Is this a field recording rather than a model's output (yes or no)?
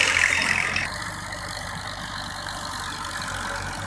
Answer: no